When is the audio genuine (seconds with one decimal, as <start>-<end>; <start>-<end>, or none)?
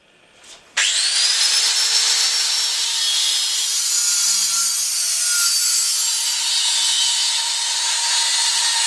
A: 0.0-8.9